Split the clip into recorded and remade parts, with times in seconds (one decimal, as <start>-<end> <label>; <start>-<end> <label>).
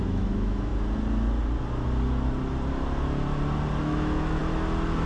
0.0-0.7 remade; 0.7-3.8 recorded; 3.8-4.4 remade; 4.4-5.1 recorded